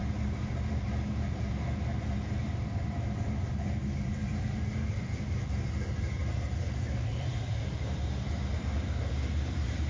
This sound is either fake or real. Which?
fake